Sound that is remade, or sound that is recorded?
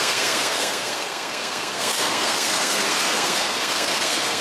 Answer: remade